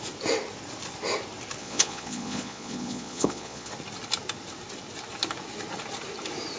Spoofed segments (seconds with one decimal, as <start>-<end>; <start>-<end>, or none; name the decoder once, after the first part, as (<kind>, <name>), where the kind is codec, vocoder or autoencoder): 1.6-3.7 (vocoder, Vocos)